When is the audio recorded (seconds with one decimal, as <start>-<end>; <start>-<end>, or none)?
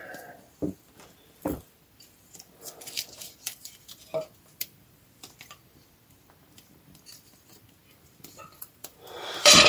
none